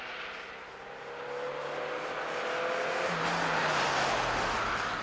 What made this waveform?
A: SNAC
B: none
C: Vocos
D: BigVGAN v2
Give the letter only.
B